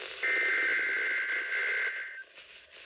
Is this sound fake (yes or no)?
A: no